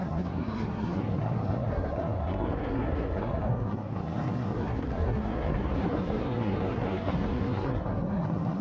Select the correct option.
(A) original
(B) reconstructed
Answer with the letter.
B